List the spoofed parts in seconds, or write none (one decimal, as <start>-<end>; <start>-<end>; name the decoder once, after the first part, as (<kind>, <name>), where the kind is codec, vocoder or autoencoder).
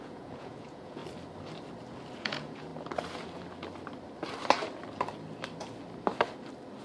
0.0-1.0 (vocoder, Vocos); 2.2-2.7